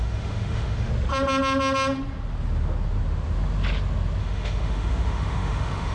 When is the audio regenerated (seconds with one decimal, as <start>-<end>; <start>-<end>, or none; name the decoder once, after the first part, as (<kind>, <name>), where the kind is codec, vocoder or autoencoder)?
0.0-0.9 (autoencoder, DAC-VAE); 4.2-5.9